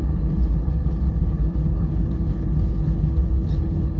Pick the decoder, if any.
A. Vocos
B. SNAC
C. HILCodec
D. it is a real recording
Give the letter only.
C